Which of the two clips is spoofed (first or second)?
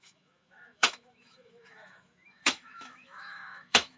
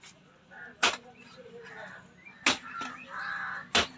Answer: first